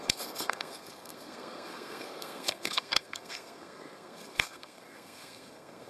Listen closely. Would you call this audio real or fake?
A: fake